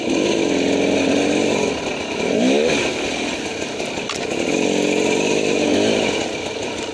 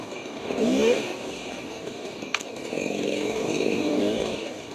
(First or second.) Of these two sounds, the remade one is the second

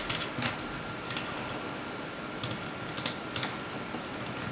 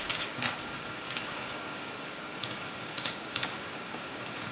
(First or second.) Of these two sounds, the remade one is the second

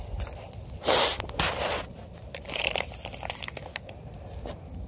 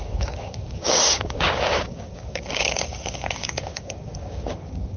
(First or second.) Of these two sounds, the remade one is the second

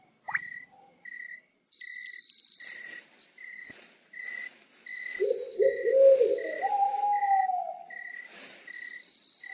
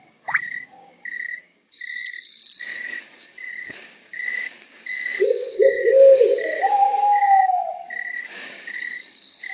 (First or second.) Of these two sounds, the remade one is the second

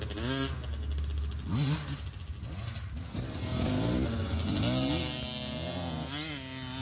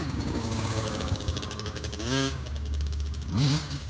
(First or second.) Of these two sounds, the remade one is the second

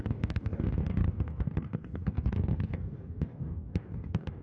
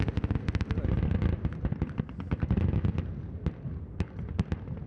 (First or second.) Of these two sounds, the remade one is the first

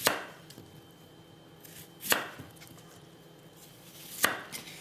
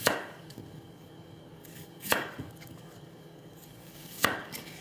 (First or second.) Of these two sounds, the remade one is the second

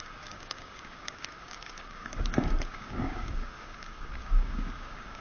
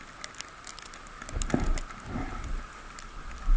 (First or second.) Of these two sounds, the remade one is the first